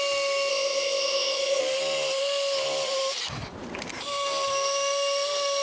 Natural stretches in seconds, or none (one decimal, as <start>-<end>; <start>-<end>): 0.0-0.5; 1.6-5.6